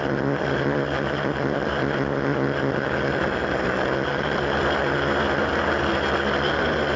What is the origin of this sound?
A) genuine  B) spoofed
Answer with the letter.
A